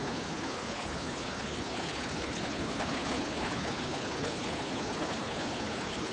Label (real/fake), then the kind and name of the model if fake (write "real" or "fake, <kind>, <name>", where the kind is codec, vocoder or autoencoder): fake, codec, HILCodec